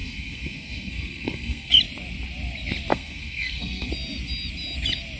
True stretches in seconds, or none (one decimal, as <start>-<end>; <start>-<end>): 1.7-2.9; 3.9-5.2